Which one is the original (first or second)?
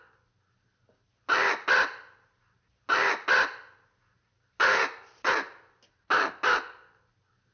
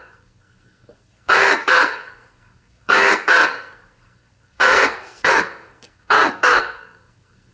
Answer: first